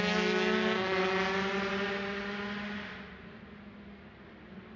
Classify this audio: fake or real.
real